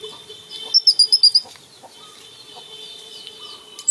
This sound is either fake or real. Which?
real